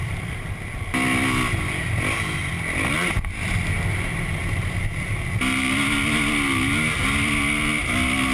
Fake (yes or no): no